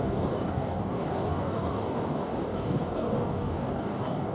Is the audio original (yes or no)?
no